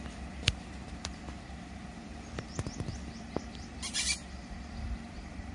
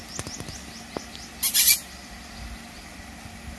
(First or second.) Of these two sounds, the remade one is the first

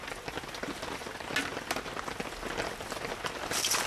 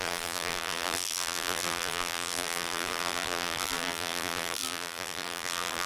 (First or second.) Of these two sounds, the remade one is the second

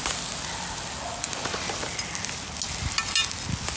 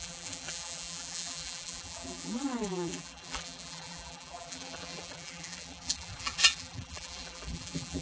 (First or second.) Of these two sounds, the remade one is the second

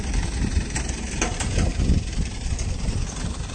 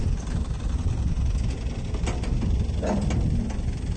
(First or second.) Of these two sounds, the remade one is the first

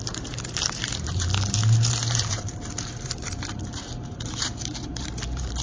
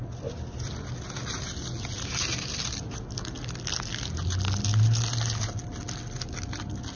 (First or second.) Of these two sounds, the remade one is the first